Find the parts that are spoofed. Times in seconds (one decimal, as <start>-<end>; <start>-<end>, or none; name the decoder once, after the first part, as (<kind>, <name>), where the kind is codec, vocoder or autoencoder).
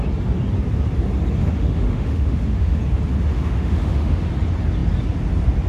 1.4-2.8 (autoencoder, DAC-VAE); 3.3-4.3